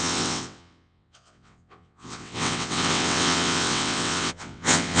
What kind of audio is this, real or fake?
fake